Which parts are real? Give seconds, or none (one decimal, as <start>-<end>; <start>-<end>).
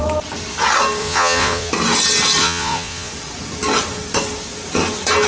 0.0-1.0; 1.7-2.4; 3.1-5.3